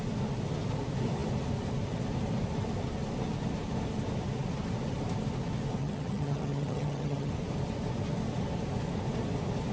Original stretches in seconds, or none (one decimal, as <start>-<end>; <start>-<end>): 0.0-5.8; 7.3-9.7